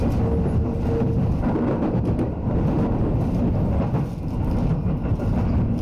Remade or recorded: recorded